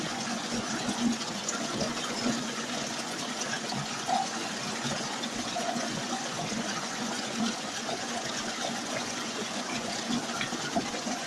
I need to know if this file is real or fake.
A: fake